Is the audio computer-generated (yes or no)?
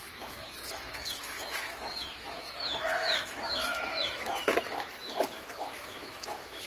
yes